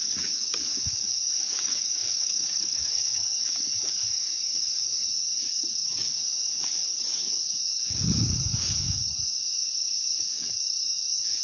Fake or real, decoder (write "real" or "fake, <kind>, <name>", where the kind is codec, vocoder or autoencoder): fake, codec, DAC